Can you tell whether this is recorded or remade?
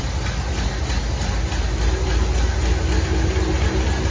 recorded